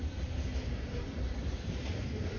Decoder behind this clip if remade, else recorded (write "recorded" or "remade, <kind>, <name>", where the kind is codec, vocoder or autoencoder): recorded